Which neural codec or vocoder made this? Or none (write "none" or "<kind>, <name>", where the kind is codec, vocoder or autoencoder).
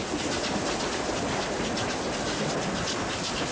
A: none